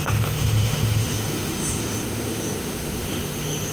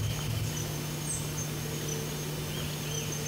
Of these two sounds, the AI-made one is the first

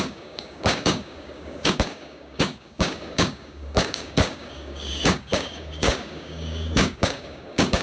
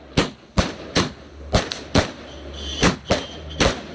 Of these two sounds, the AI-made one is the first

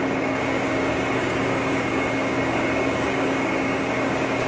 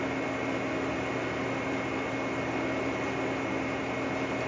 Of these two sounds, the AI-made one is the first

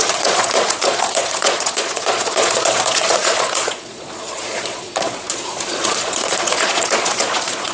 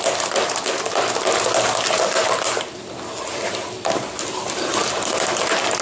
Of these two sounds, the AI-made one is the first